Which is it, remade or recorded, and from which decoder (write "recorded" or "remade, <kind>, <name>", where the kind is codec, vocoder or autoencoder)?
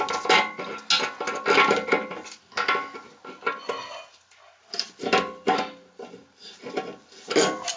recorded